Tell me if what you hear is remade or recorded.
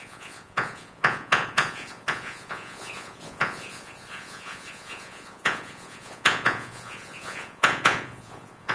remade